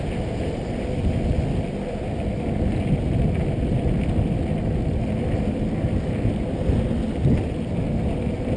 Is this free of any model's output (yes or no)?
yes